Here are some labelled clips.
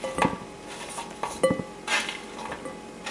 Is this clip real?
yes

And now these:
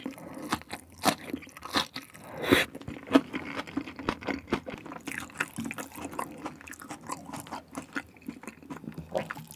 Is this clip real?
yes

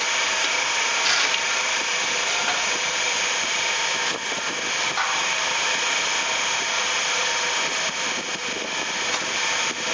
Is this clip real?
yes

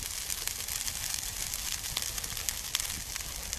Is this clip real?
yes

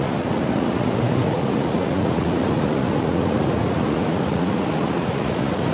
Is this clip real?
no